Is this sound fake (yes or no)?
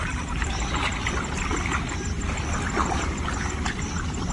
no